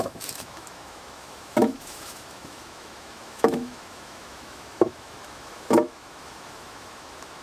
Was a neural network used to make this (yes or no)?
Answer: yes